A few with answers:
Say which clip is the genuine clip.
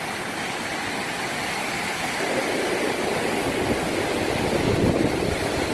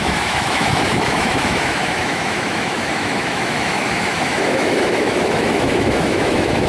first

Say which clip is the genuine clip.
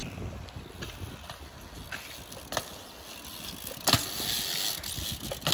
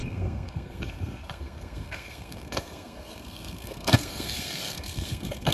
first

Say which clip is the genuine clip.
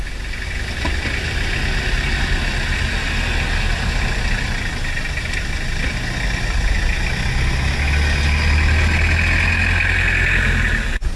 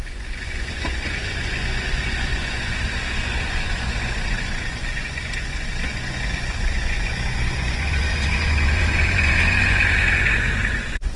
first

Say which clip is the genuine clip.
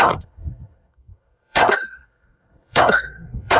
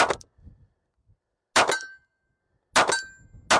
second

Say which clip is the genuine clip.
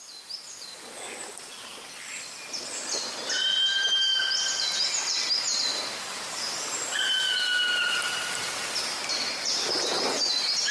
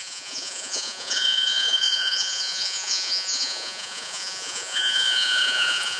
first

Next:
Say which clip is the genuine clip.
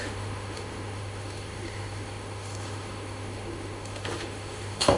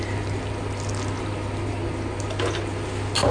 second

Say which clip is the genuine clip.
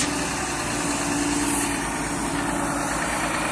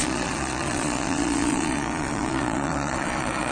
first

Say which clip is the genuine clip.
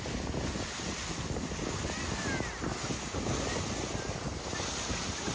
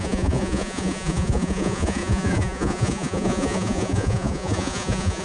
first